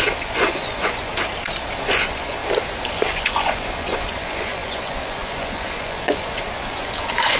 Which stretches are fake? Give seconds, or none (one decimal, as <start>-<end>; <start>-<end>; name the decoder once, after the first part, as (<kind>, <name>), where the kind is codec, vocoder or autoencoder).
0.0-1.1 (vocoder, Vocos); 1.8-2.4; 2.9-7.4